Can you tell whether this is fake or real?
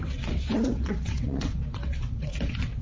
fake